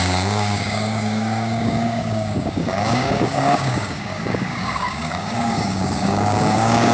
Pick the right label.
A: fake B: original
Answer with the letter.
A